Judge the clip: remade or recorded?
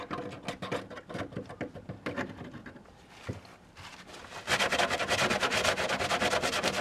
recorded